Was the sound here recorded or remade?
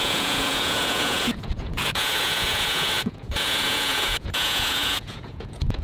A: remade